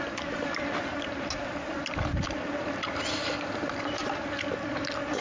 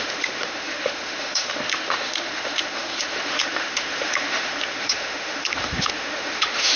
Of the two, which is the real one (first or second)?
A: first